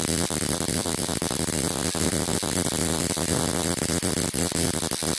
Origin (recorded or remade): recorded